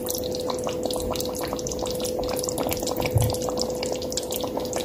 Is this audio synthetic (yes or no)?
no